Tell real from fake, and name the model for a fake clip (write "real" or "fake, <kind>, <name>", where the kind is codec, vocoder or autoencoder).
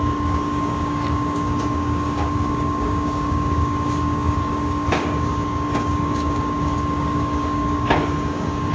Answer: fake, codec, DAC